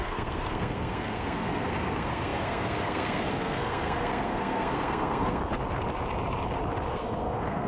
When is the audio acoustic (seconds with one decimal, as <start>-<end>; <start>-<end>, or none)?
5.4-6.9